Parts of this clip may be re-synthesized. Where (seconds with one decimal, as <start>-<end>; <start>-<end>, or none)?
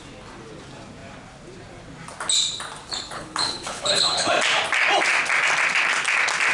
3.0-4.3